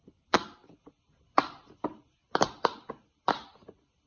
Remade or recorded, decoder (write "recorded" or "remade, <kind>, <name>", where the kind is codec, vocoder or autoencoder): recorded